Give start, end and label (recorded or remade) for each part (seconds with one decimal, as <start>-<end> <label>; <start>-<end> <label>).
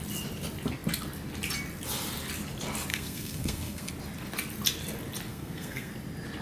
0.0-2.9 recorded; 2.9-3.9 remade; 3.9-5.3 recorded; 5.3-5.9 remade; 5.9-6.4 recorded